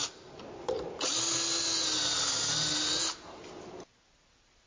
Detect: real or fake real